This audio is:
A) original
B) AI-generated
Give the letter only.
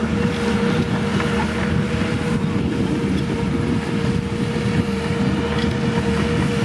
A